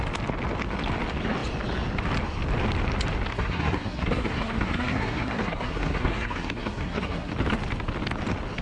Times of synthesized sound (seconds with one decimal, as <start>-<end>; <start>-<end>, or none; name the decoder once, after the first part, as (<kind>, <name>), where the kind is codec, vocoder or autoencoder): 3.3-7.3 (codec, SNAC)